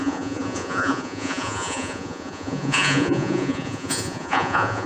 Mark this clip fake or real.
fake